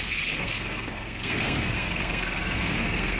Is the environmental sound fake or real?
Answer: fake